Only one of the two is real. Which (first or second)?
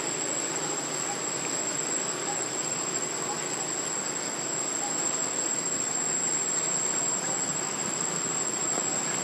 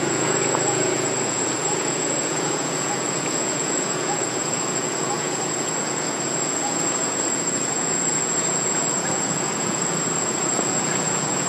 first